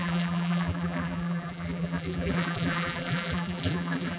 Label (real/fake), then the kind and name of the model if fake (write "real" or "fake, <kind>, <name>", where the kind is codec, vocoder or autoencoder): fake, vocoder, BigVGAN v2